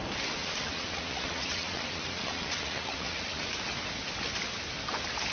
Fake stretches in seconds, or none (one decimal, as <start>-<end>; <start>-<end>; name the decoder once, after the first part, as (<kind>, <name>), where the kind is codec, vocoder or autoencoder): 0.4-3.5 (vocoder, Vocos)

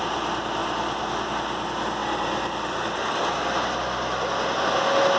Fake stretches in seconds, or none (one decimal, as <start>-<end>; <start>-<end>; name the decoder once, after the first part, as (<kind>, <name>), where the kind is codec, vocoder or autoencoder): none

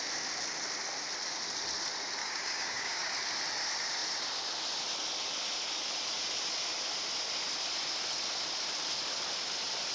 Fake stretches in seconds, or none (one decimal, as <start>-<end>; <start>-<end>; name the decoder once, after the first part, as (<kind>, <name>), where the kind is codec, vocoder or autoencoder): 2.2-3.1 (codec, DAC)

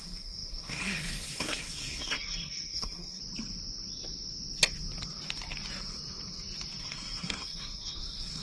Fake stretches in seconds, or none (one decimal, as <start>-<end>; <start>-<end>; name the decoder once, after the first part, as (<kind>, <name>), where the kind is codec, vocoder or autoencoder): 0.0-3.2 (codec, SNAC); 6.8-8.4